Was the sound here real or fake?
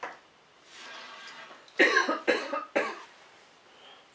real